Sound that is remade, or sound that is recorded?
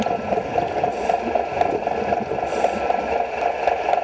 recorded